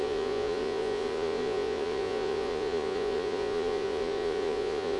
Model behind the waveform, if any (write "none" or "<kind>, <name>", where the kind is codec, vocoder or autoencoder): vocoder, Vocos